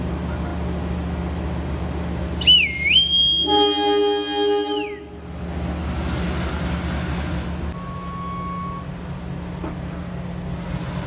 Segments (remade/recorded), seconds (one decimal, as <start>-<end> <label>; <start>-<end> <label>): 0.0-11.1 recorded